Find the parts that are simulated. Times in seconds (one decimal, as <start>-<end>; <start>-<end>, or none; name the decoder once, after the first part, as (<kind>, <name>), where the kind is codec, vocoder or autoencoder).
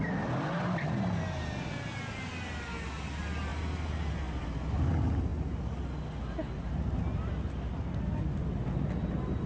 none